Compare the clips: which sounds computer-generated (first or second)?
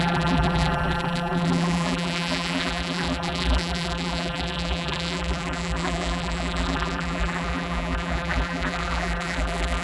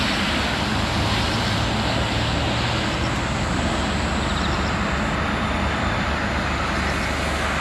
first